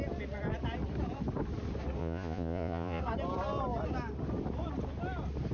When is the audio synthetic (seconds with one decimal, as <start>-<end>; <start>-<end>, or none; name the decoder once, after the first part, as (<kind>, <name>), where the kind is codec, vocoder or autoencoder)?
2.0-3.0 (vocoder, Vocos)